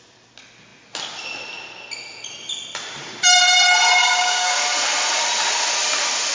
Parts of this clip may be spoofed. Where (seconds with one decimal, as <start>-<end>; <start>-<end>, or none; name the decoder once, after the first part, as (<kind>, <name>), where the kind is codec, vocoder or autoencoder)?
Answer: 4.0-4.6 (codec, DAC)